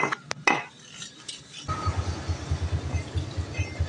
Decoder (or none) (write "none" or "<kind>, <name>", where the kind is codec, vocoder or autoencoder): none